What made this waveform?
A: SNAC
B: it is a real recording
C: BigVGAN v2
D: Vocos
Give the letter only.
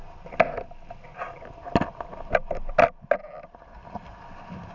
B